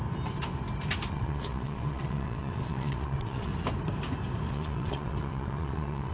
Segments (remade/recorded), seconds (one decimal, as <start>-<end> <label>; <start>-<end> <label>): 0.0-1.1 recorded; 1.1-3.5 remade; 3.5-4.5 recorded; 4.5-6.1 remade